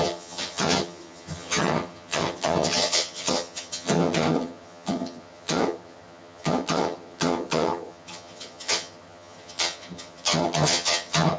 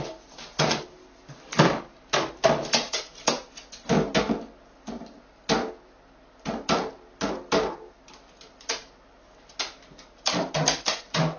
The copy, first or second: first